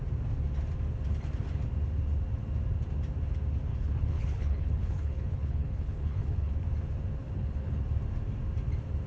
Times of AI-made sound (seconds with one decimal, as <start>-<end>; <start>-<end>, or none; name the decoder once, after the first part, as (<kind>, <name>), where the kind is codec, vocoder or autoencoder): 3.7-6.5 (codec, HILCodec); 7.2-7.8